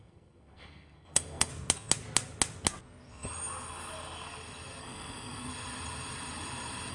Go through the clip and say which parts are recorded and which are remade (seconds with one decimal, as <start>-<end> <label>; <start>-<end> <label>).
0.0-1.5 remade; 1.5-4.8 recorded; 4.8-5.5 remade; 5.5-6.9 recorded